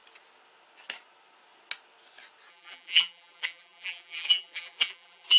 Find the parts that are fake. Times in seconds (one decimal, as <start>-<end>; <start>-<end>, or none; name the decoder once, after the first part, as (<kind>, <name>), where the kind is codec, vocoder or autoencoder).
2.5-5.4 (vocoder, BigVGAN v2)